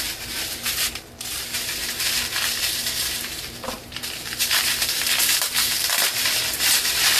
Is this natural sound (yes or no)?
no